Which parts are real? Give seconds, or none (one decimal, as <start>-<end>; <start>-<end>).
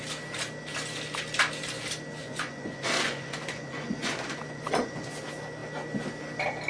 0.0-2.2; 5.1-6.7